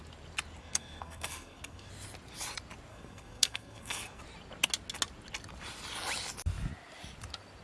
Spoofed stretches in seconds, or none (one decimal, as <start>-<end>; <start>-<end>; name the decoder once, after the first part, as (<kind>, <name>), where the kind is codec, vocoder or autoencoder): 0.6-1.9 (codec, SNAC); 2.9-4.2